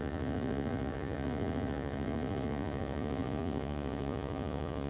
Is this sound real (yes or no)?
no